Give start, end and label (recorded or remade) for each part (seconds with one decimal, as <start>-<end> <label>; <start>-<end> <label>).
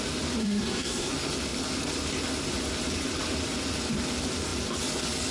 0.0-0.4 recorded; 0.4-1.1 remade; 1.1-5.3 recorded